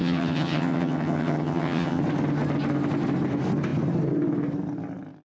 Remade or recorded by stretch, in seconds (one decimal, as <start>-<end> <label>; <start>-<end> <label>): 0.0-2.0 remade; 2.0-5.3 recorded